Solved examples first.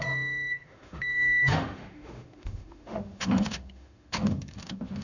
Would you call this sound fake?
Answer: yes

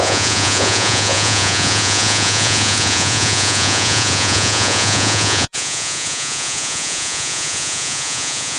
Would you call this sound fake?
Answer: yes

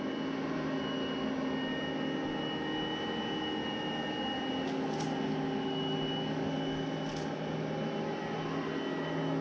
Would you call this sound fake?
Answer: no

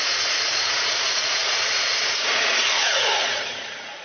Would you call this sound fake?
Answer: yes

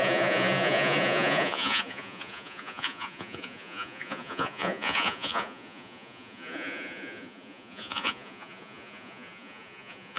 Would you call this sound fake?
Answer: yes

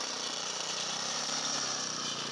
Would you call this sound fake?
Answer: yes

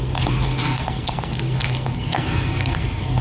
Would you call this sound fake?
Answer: yes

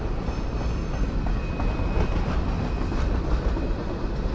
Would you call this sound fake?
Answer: no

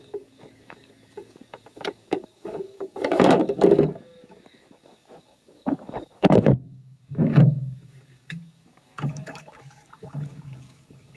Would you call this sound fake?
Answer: yes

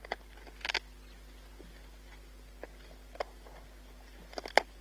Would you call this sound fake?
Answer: no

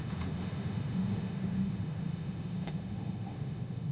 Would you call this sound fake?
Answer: yes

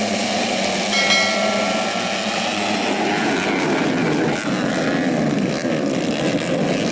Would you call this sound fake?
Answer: no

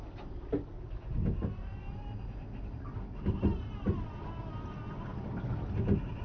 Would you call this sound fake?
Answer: no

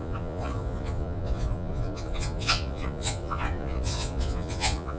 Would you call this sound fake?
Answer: yes